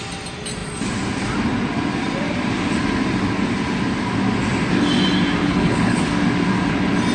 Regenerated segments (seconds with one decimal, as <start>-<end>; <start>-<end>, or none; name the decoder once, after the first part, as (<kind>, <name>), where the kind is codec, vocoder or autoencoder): 5.4-6.0 (codec, HILCodec)

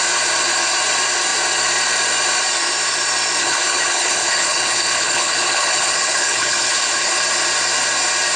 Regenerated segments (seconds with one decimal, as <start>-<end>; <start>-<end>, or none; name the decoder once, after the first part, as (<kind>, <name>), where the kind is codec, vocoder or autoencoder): 3.4-7.1 (codec, HILCodec)